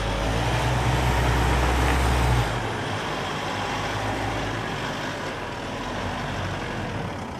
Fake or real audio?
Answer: real